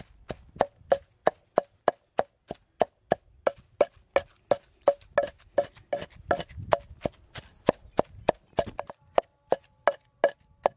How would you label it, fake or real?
real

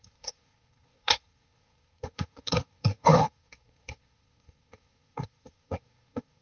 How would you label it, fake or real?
fake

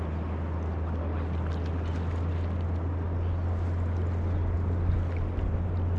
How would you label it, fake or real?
real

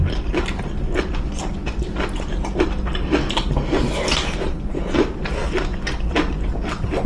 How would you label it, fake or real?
real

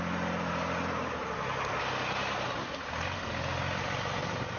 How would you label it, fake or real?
real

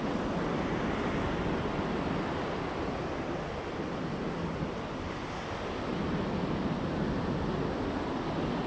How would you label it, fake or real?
real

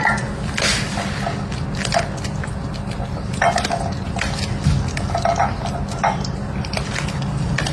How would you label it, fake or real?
real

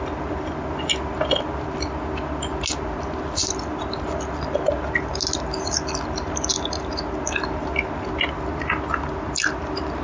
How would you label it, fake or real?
real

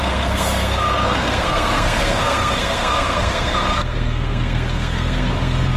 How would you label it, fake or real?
fake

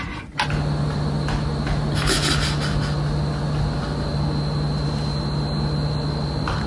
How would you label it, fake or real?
real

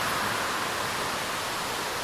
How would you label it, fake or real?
real